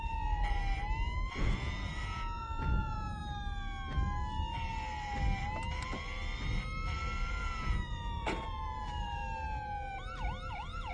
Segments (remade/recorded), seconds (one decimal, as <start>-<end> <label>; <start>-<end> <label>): 0.0-0.6 remade; 0.6-1.4 recorded; 1.4-3.2 remade; 3.2-7.3 recorded; 7.3-9.2 remade; 9.2-10.5 recorded; 10.5-10.9 remade